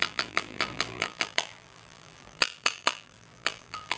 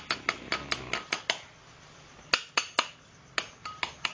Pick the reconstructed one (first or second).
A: first